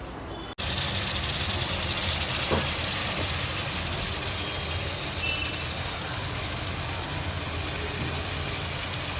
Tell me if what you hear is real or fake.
real